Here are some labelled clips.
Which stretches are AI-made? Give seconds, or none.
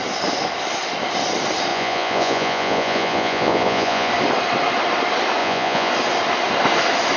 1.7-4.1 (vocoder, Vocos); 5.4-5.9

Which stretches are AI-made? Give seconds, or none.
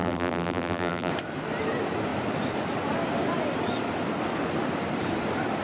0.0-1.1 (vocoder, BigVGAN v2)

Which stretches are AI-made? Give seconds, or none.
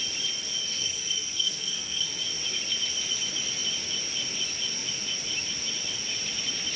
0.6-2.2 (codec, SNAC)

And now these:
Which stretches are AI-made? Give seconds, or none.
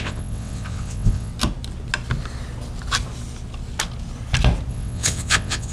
0.0-1.3 (vocoder, WaveNeXt); 4.7-5.7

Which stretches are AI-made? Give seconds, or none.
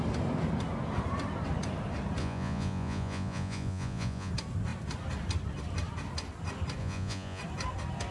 2.2-4.3 (vocoder, Vocos); 6.8-7.4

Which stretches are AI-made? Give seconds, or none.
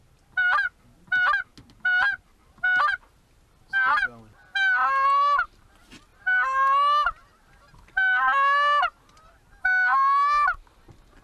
none